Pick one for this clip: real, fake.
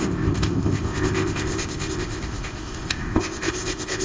fake